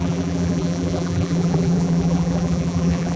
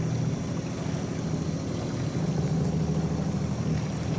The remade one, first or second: first